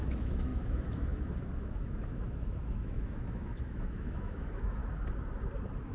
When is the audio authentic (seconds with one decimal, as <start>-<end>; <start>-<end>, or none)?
4.8-5.9